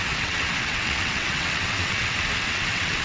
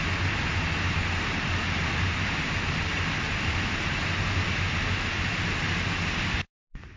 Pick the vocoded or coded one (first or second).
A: first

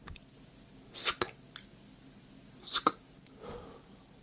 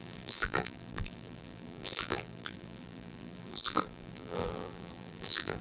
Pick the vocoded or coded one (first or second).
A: second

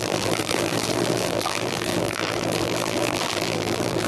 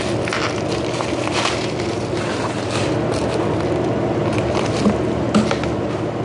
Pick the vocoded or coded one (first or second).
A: first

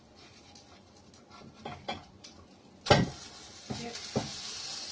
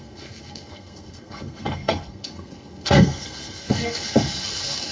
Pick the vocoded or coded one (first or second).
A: second